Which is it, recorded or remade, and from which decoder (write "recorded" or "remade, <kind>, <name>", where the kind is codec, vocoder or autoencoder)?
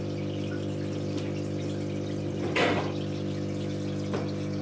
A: recorded